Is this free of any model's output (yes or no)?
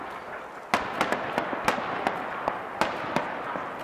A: yes